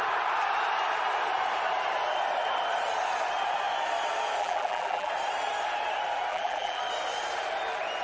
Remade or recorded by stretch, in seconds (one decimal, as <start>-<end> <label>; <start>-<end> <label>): 0.0-4.4 recorded; 4.4-5.1 remade; 5.1-6.3 recorded; 6.3-6.8 remade; 6.8-8.0 recorded